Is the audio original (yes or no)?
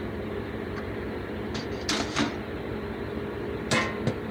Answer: yes